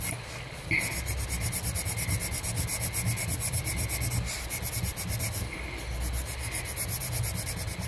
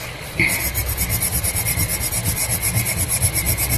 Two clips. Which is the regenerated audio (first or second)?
second